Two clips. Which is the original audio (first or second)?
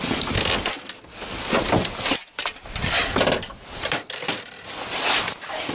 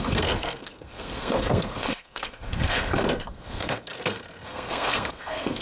first